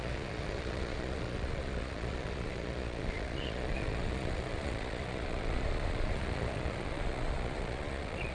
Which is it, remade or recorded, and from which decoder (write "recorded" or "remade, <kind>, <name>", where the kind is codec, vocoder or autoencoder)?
remade, vocoder, Vocos